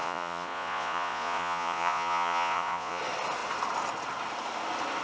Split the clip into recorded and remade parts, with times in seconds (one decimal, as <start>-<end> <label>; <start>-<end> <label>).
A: 0.0-3.0 remade; 3.0-5.0 recorded